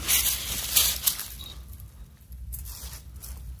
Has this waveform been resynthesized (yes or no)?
no